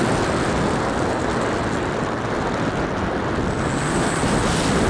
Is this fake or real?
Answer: real